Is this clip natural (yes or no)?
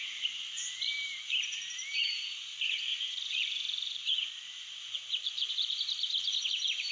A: no